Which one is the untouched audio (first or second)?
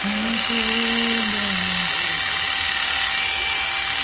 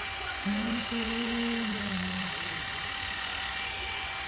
first